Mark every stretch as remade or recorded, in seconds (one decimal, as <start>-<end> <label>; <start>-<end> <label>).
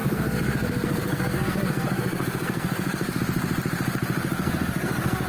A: 0.0-3.2 remade; 3.2-4.4 recorded; 4.4-5.3 remade